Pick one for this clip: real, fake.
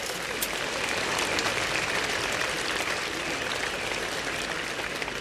real